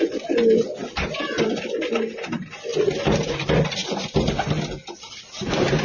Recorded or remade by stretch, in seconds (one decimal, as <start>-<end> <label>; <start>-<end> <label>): 0.0-5.8 recorded